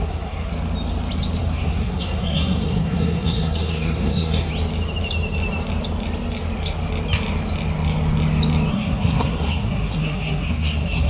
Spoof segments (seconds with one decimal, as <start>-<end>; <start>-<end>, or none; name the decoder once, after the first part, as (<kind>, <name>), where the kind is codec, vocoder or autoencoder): 0.0-0.5 (codec, SNAC); 1.4-4.5; 8.7-11.1